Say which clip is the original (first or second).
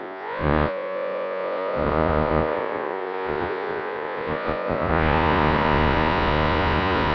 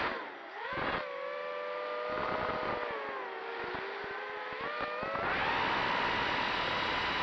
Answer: second